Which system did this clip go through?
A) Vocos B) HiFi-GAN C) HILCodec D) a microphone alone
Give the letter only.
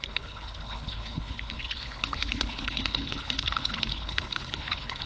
C